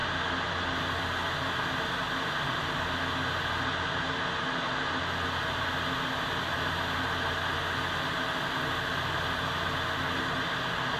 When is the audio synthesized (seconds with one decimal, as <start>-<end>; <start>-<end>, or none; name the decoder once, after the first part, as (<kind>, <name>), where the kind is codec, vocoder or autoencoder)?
none